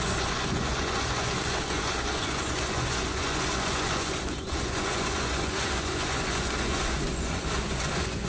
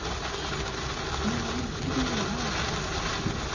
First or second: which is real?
second